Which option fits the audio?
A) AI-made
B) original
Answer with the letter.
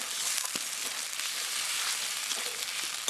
B